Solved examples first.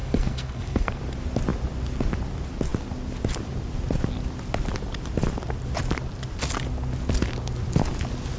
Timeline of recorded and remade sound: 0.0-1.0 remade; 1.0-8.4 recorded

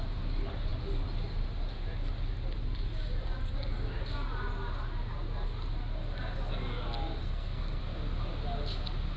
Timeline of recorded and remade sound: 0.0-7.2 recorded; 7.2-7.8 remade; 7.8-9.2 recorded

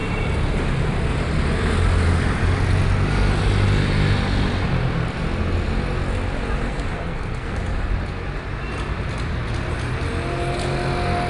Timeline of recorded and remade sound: 0.0-6.6 recorded; 6.6-7.6 remade; 7.6-11.3 recorded

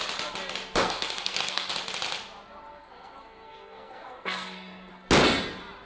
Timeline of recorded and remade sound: 0.0-0.8 recorded; 0.8-1.7 remade; 1.7-2.7 recorded; 2.7-4.9 remade; 4.9-5.9 recorded

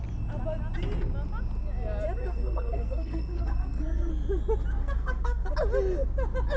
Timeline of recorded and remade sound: 0.0-2.2 recorded; 2.2-4.1 remade; 4.1-4.8 recorded; 4.8-5.5 remade; 5.5-6.6 recorded

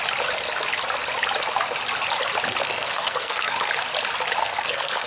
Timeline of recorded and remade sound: 0.0-2.6 recorded; 2.6-3.7 remade; 3.7-4.4 recorded; 4.4-5.1 remade

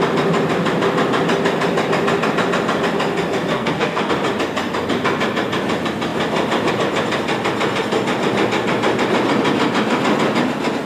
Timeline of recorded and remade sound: 0.0-3.5 recorded; 3.5-4.1 remade; 4.1-10.9 recorded

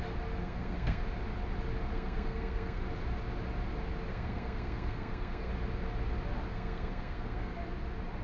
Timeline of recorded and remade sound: 0.0-0.4 recorded; 0.4-1.0 remade; 1.0-1.9 recorded; 1.9-2.8 remade; 2.8-4.1 recorded; 4.1-5.5 remade; 5.5-6.5 recorded; 6.5-7.5 remade; 7.5-8.2 recorded